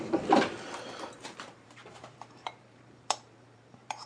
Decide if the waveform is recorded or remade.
remade